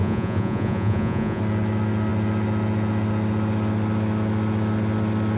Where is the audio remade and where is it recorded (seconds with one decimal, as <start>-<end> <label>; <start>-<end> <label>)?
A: 0.0-1.4 remade; 1.4-5.4 recorded